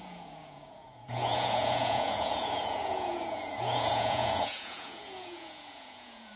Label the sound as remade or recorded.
remade